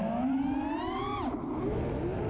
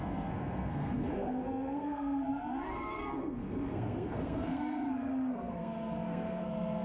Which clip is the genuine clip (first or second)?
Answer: first